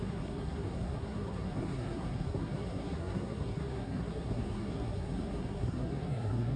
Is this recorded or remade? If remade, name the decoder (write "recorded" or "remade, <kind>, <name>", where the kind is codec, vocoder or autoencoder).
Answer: remade, codec, SNAC